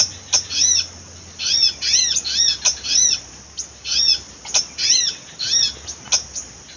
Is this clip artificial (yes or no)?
no